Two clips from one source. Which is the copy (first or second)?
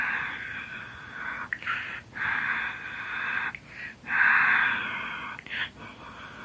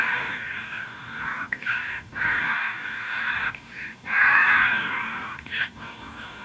second